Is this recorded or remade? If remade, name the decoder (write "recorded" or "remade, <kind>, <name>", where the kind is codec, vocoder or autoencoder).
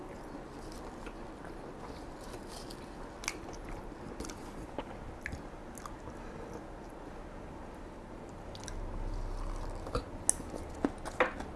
recorded